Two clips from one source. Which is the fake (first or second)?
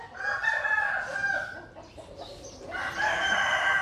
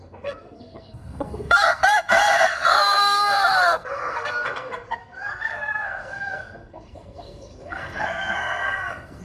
second